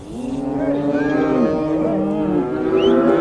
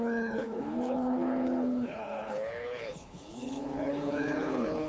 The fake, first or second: second